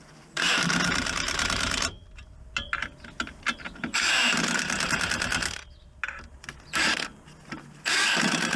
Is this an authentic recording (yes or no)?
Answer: yes